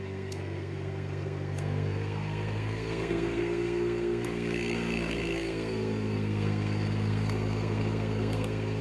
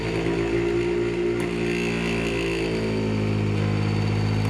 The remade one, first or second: first